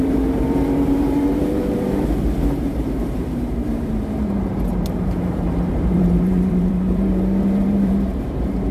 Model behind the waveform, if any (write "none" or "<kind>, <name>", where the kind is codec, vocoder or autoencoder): vocoder, BigVGAN v2